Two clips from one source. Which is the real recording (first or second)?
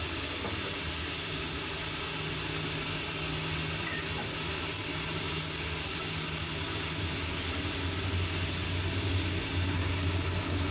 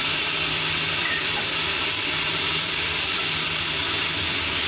first